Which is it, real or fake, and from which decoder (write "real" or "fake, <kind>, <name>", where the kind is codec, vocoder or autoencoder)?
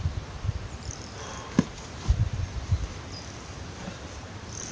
fake, vocoder, BigVGAN v2